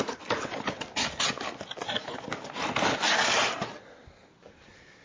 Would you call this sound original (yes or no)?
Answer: yes